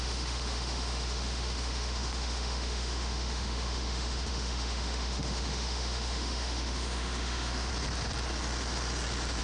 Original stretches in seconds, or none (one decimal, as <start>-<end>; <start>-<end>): 7.7-9.4